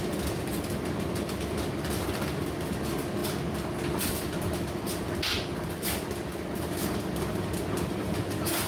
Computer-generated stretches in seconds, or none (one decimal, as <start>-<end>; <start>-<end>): 0.0-3.2; 4.0-8.7

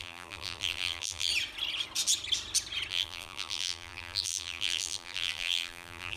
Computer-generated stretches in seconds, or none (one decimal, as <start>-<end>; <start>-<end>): 0.0-1.3; 2.9-6.2